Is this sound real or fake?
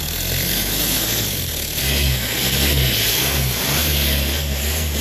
fake